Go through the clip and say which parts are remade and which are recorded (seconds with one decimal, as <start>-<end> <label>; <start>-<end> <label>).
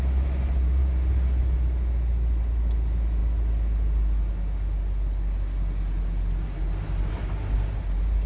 0.0-8.3 recorded